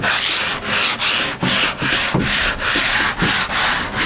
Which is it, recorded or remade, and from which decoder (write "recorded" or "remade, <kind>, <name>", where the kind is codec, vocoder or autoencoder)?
recorded